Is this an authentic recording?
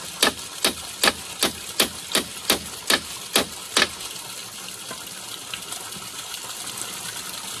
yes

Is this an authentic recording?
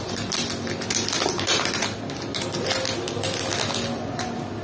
yes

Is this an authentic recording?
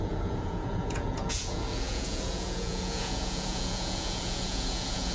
no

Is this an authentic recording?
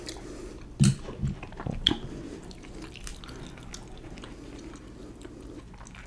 yes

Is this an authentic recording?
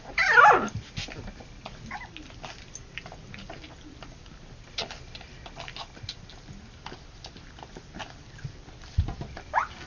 yes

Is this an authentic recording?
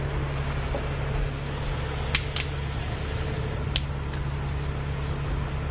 yes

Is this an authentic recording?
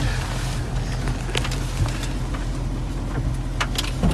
yes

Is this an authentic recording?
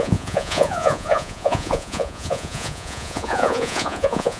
no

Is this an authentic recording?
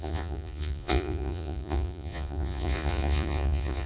no